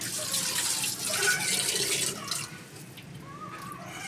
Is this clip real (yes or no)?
yes